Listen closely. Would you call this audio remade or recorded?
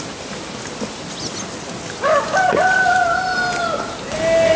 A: recorded